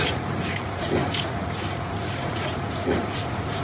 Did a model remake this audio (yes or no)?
yes